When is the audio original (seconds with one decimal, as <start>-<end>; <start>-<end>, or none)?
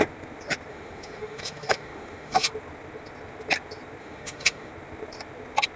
0.0-0.7; 2.5-4.0; 4.7-5.8